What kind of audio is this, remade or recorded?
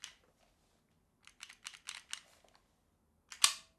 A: recorded